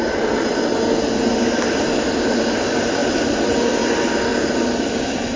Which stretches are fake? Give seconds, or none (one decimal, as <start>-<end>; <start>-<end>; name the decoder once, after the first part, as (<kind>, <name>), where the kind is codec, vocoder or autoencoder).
none

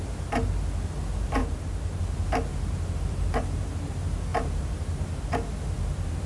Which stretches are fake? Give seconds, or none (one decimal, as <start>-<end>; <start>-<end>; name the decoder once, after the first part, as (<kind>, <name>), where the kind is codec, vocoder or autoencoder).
1.4-2.0 (vocoder, BigVGAN v2); 2.5-3.8; 4.3-5.0

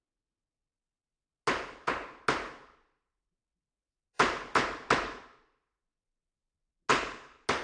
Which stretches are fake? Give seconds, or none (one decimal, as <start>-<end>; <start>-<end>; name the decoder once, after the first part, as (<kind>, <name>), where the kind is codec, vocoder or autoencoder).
none

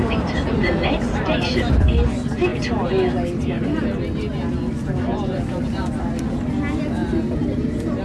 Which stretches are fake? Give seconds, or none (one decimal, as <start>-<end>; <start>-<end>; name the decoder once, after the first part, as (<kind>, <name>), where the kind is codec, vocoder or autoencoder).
0.0-1.8 (vocoder, BigVGAN v2); 7.0-8.0

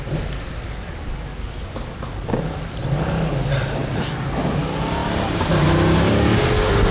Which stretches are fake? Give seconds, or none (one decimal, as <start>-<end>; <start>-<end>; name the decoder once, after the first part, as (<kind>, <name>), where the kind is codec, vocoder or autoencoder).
3.8-4.6 (vocoder, BigVGAN v2); 5.0-6.4

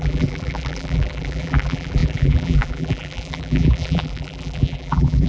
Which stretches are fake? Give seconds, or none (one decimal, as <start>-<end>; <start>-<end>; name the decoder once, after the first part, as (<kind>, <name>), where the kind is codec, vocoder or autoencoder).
0.0-5.3 (vocoder, BigVGAN v2)